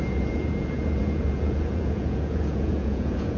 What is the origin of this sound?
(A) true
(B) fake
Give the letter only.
B